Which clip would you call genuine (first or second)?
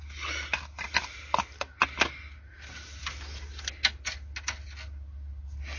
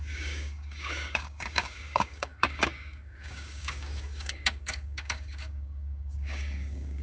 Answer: first